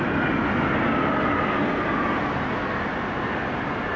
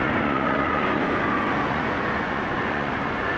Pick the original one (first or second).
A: first